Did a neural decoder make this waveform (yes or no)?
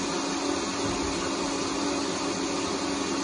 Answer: no